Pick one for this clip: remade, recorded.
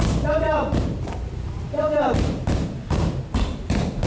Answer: remade